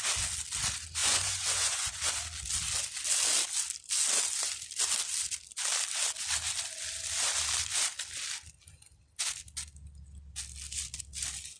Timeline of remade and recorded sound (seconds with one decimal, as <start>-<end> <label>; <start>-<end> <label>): 0.0-1.0 recorded; 1.0-2.0 remade; 2.0-11.6 recorded